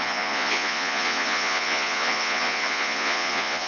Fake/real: fake